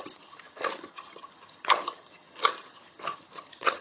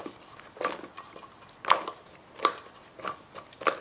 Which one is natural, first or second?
second